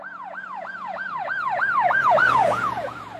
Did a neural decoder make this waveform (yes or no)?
yes